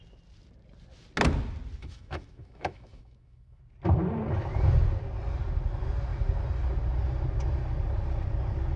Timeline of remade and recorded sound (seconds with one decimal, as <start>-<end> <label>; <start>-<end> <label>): 0.0-1.8 recorded; 1.8-3.6 remade; 3.6-8.8 recorded